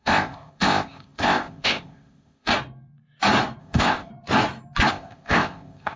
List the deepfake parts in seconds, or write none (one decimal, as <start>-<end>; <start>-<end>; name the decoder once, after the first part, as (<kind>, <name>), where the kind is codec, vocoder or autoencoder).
0.0-2.5 (codec, ZipCodec); 3.6-4.1; 4.9-6.0